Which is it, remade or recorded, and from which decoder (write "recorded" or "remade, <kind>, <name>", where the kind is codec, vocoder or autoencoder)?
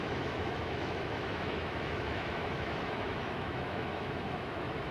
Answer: remade, autoencoder, DAC-VAE